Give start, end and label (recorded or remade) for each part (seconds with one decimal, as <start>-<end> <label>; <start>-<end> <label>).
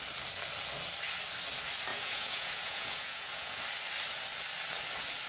0.0-1.9 recorded; 1.9-3.6 remade; 3.6-5.3 recorded